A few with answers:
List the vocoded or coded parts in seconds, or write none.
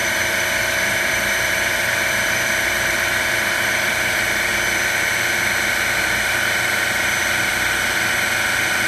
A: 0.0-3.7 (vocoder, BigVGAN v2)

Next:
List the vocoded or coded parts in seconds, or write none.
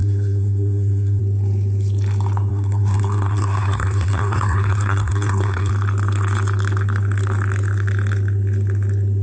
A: 0.0-1.2 (codec, SNAC); 2.5-5.7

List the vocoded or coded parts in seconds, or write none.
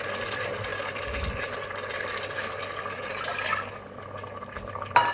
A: none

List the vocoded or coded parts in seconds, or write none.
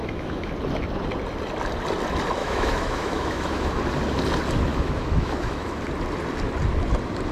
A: 0.0-0.5 (autoencoder, DAC-VAE); 2.4-3.8; 4.7-5.8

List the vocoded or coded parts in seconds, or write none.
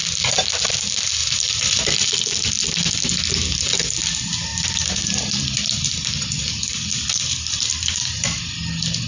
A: 1.2-2.0 (vocoder, BigVGAN v2); 4.5-8.4